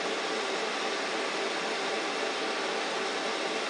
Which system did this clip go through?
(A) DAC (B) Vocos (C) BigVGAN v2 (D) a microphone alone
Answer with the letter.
D